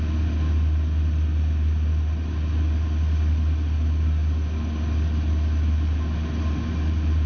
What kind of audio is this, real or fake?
real